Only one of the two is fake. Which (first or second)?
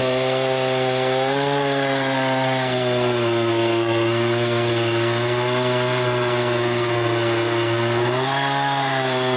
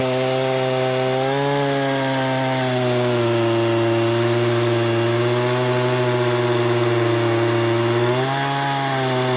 first